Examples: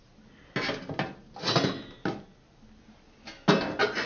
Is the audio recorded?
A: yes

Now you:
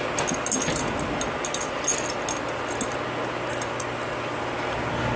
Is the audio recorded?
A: yes